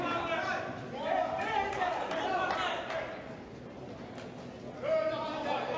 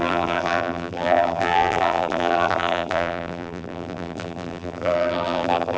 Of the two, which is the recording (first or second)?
first